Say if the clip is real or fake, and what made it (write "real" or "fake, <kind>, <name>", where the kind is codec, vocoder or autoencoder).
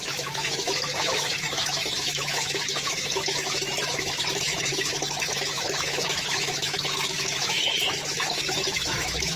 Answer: fake, autoencoder, DAC-VAE